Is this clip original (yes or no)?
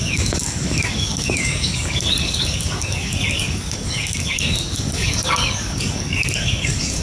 no